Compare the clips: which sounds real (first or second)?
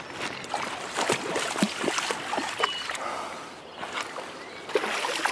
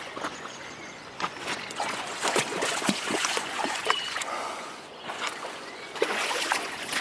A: first